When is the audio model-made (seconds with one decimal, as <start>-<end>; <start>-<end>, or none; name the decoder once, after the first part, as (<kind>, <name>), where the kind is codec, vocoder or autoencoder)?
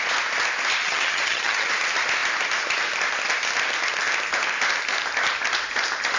0.8-1.7 (vocoder, HiFi-GAN)